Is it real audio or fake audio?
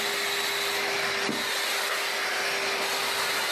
real